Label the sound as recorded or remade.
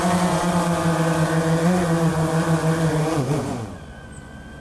remade